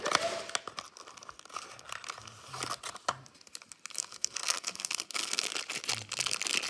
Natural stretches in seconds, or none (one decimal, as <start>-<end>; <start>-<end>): 0.0-4.0; 5.5-6.7